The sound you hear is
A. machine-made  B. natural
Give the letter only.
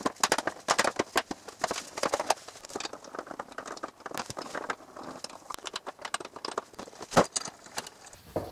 B